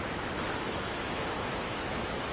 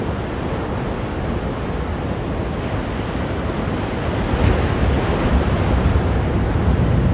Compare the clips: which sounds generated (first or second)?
first